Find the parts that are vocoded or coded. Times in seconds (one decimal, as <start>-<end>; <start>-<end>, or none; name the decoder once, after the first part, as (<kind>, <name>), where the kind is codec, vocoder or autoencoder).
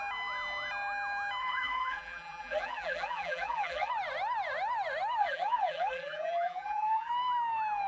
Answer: 1.4-3.9 (vocoder, BigVGAN v2); 5.2-7.1